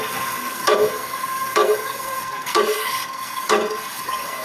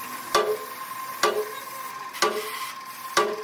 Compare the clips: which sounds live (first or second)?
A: second